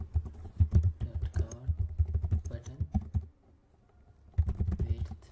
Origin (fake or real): real